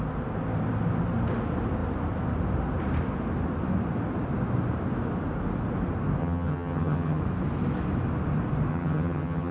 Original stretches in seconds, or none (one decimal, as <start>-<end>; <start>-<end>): 0.0-6.2; 7.2-8.7